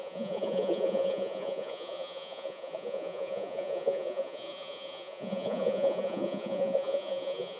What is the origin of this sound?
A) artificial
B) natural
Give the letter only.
A